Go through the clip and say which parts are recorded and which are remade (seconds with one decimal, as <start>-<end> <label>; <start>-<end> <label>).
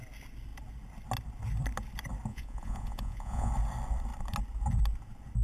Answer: 0.0-2.3 recorded; 2.3-3.5 remade; 3.5-5.4 recorded